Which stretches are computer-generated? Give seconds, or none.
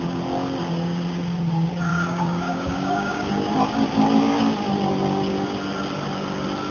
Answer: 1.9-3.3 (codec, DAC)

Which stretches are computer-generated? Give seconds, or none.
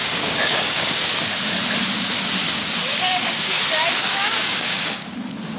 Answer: 0.0-0.9 (codec, DAC); 2.9-3.6; 4.0-5.1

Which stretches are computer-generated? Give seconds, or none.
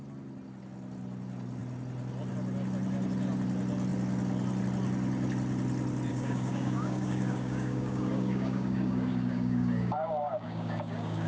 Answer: 6.1-11.3 (codec, DAC)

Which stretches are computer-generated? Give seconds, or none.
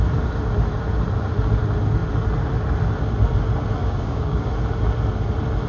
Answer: 3.8-4.5 (codec, DAC)